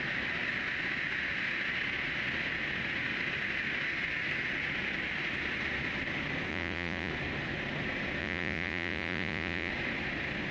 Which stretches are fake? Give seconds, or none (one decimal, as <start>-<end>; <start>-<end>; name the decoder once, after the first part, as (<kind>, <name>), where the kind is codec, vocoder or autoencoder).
6.5-7.1 (vocoder, Vocos); 8.2-9.7